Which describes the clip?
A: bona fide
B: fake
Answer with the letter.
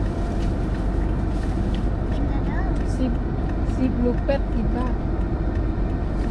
A